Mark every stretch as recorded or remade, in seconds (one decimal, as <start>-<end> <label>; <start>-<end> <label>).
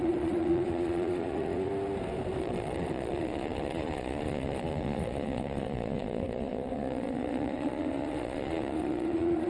0.0-1.7 remade; 1.7-2.4 recorded; 2.4-9.5 remade